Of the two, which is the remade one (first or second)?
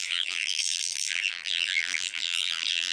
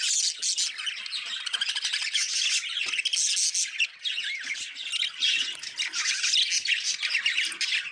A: first